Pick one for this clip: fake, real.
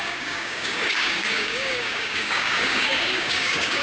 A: fake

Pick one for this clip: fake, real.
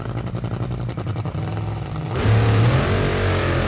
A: real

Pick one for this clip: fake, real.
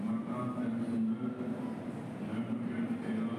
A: real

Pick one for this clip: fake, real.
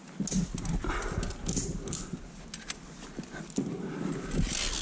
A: real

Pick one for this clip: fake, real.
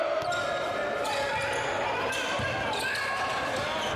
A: real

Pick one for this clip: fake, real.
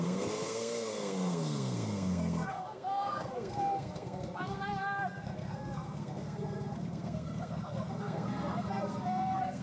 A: fake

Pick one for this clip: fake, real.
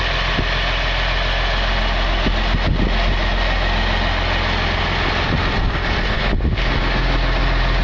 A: real